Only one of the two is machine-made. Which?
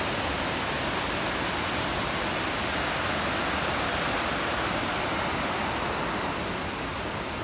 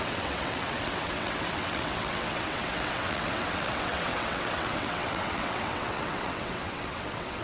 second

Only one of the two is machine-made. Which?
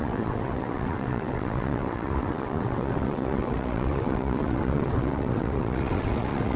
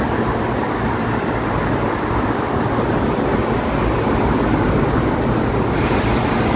first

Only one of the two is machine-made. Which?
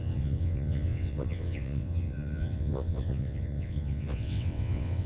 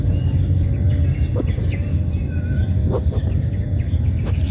first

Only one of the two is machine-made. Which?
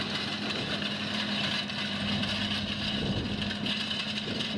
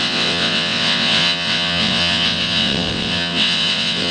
second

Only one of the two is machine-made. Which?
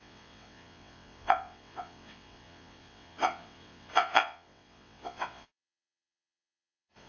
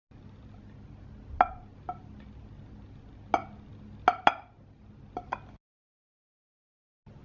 first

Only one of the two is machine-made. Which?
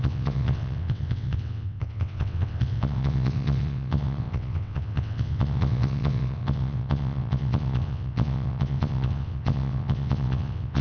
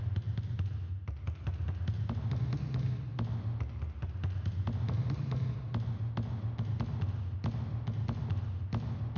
first